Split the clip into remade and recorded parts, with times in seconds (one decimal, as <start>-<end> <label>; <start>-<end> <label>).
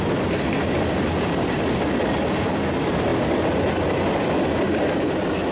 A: 0.0-5.5 recorded